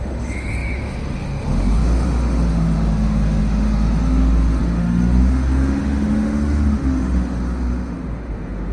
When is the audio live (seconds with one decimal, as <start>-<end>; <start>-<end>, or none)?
none